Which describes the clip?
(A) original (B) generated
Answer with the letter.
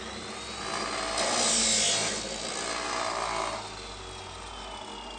A